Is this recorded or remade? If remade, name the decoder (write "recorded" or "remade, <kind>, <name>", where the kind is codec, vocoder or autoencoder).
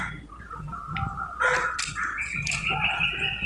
recorded